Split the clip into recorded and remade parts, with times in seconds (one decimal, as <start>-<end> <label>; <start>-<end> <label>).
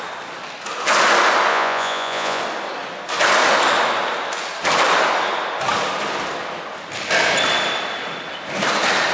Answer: 0.0-1.5 recorded; 1.5-2.4 remade; 2.4-9.1 recorded